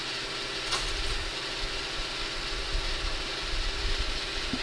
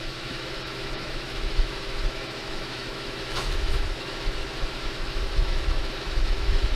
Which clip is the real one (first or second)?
first